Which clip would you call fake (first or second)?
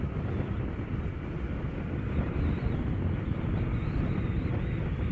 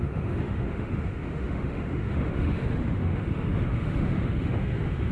second